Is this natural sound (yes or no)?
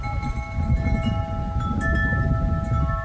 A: yes